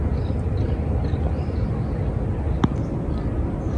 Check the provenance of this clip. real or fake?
real